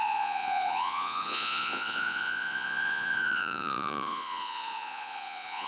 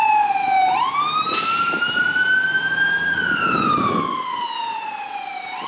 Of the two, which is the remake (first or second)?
first